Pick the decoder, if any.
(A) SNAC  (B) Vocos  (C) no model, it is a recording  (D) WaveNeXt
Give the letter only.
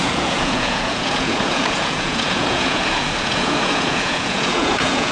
B